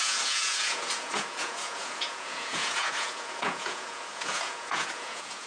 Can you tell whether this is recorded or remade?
remade